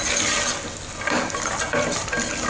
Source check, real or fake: real